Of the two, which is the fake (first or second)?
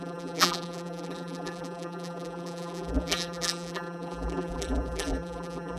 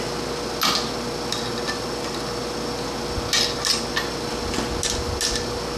first